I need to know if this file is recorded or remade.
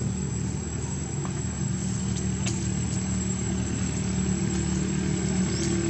recorded